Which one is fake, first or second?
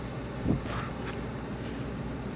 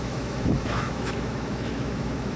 second